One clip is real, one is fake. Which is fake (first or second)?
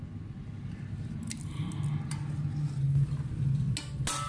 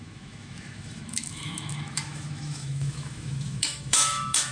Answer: second